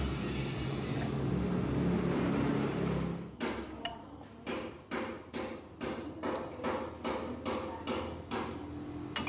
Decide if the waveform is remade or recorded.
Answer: recorded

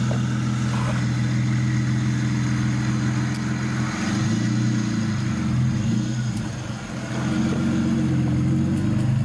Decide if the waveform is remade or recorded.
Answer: recorded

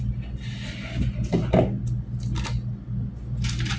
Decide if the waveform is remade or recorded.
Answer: recorded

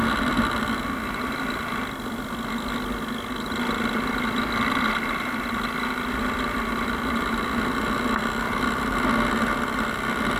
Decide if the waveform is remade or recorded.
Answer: recorded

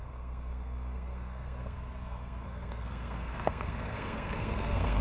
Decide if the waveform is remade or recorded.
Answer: remade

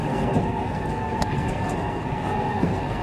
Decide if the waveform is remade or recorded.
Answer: remade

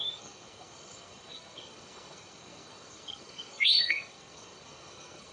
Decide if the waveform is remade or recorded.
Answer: remade